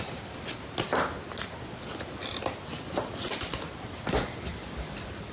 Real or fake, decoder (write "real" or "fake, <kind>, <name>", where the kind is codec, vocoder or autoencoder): real